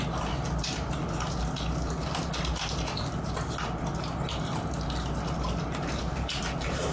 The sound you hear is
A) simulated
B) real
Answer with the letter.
B